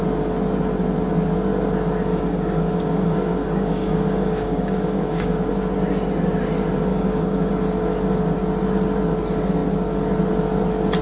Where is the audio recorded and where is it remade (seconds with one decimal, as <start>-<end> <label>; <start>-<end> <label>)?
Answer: 0.0-2.1 recorded; 2.1-5.5 remade; 5.5-6.9 recorded; 6.9-7.5 remade; 7.5-11.0 recorded